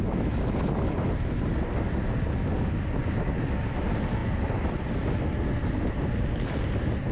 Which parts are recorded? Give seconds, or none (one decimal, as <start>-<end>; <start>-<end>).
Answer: 0.0-7.1